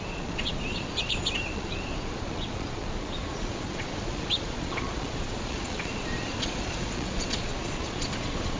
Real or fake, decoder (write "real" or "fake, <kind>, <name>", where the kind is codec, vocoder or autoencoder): fake, vocoder, Vocos